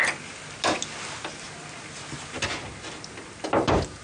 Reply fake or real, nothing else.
real